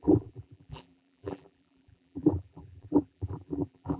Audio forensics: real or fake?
fake